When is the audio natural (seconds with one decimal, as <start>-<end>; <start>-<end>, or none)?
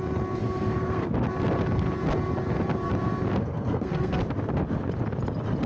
0.0-0.4; 1.1-3.4; 4.2-5.7